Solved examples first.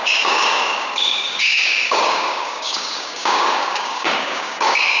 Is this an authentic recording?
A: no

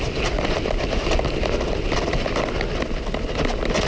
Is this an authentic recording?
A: yes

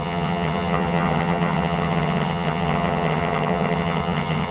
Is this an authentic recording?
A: no